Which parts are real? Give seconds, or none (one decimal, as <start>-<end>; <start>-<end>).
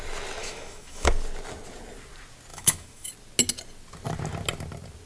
0.0-0.4; 1.1-2.5; 3.1-5.1